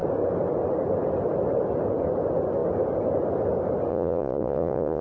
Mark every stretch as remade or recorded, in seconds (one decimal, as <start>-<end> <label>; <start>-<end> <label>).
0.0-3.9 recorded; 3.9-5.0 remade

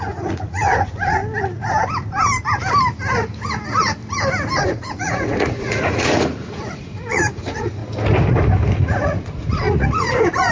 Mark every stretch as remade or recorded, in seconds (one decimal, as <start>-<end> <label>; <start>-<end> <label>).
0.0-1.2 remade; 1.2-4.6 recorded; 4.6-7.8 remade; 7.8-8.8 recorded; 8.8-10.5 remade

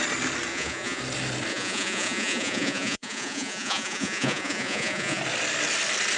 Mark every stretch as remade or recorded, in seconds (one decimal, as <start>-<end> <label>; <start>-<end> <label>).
0.0-0.5 recorded; 0.5-1.0 remade; 1.0-1.5 recorded; 1.5-5.2 remade; 5.2-6.2 recorded

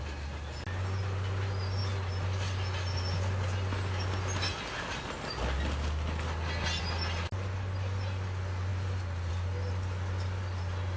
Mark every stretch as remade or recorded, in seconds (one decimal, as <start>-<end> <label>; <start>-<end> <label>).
0.0-11.0 recorded

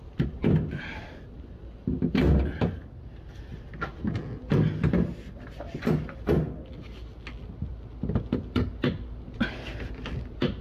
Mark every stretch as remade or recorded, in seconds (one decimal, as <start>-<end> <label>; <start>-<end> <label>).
0.0-10.6 recorded